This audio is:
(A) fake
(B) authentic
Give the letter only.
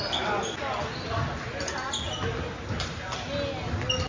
B